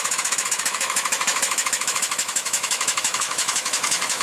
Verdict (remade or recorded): remade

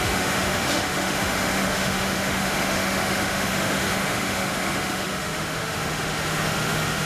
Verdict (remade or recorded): remade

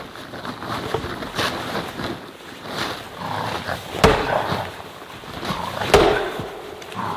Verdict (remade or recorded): recorded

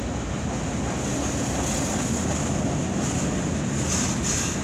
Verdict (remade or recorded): recorded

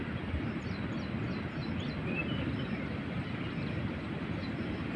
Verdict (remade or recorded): recorded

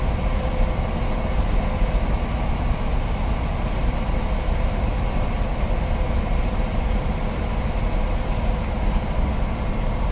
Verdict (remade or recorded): recorded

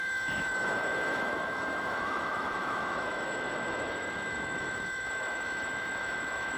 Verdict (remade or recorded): remade